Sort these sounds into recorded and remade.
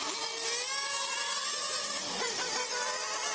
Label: recorded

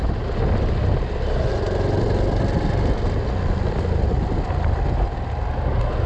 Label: recorded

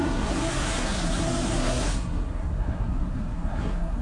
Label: remade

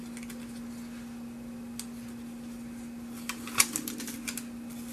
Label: recorded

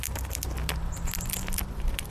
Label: recorded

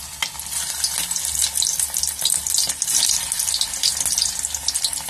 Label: recorded